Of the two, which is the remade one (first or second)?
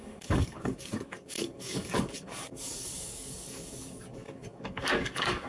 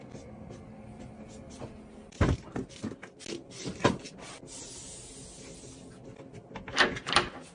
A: first